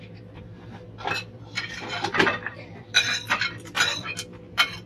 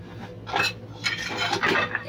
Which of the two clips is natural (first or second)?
second